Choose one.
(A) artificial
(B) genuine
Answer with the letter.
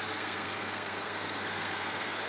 A